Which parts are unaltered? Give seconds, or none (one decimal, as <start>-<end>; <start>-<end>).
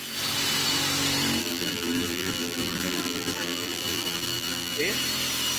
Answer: 0.0-1.4; 4.8-5.6